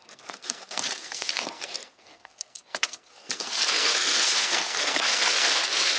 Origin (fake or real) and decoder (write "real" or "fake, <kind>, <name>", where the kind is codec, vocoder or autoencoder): fake, codec, SNAC